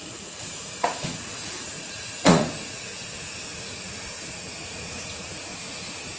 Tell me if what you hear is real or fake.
fake